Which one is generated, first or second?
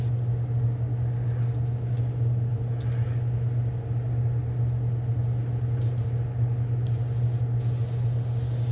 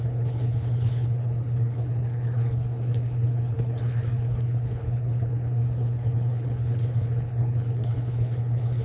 second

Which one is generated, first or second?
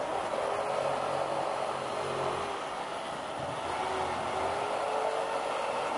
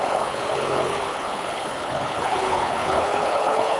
second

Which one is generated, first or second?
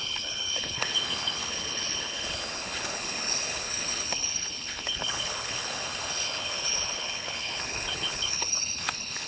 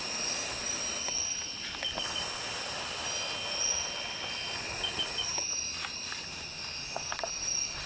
first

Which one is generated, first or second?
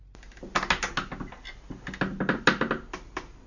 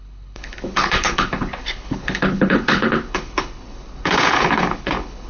second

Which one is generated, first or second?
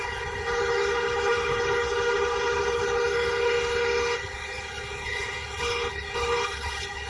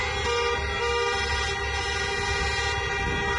first